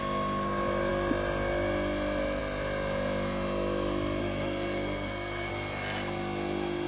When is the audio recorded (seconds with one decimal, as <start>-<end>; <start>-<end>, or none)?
0.0-4.2; 5.5-6.9